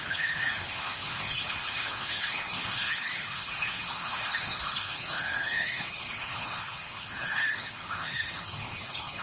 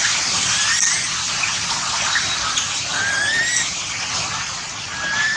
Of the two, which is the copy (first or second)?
first